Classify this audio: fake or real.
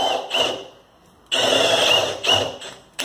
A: fake